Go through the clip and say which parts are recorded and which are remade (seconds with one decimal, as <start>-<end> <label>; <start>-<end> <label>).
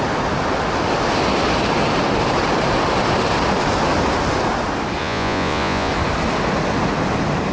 0.0-5.0 recorded; 5.0-5.9 remade; 5.9-7.5 recorded